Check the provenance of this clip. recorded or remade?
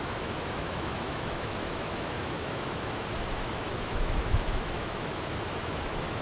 remade